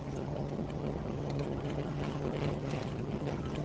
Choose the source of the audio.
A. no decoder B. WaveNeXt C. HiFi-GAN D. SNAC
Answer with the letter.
C